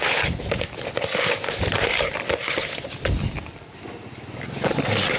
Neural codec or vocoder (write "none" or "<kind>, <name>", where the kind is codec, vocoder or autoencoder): none